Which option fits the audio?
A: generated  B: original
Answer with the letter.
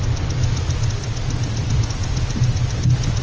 B